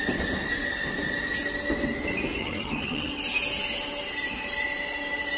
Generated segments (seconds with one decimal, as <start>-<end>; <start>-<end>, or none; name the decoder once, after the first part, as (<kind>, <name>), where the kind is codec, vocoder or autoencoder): 2.4-3.1 (vocoder, HiFi-GAN)